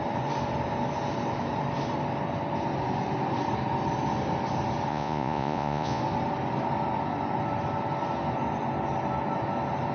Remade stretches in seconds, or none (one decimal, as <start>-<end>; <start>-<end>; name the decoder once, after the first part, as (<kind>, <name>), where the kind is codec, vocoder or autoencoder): 4.9-6.0 (vocoder, Vocos)